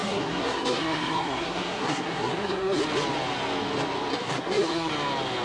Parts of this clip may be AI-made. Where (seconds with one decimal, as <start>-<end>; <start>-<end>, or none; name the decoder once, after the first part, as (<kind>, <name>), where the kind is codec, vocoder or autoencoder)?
0.0-2.8 (codec, SNAC); 4.1-4.9